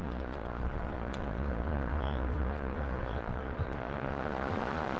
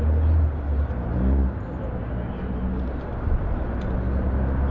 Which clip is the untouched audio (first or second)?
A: second